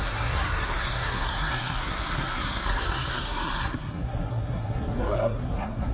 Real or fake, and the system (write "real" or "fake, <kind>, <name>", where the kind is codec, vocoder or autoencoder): fake, codec, SNAC